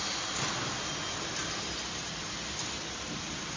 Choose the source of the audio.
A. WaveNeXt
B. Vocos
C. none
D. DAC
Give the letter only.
C